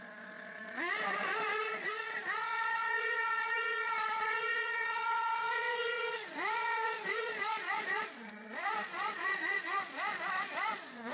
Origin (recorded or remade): remade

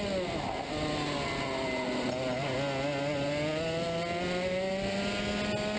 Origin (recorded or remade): recorded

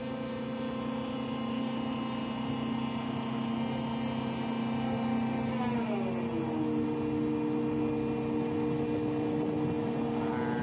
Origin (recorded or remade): recorded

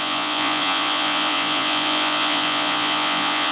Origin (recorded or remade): remade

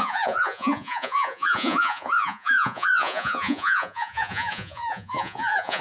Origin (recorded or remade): remade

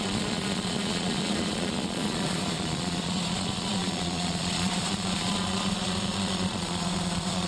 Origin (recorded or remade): remade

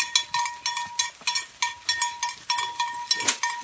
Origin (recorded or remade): recorded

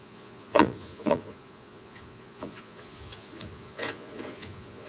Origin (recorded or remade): remade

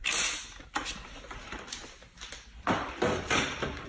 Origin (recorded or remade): recorded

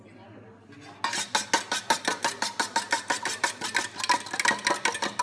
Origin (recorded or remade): recorded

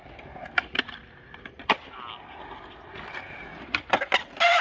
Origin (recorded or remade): recorded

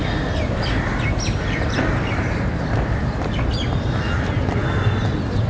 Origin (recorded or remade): recorded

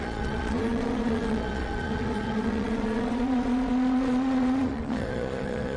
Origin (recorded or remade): remade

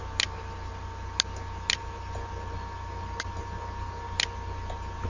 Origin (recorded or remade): recorded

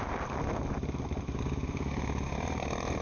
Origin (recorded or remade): recorded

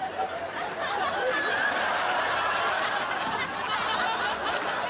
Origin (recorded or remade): recorded